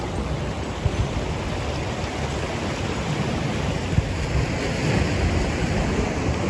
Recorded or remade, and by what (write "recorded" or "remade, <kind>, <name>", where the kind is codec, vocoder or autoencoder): recorded